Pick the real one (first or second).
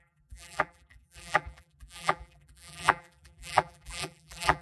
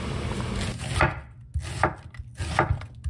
second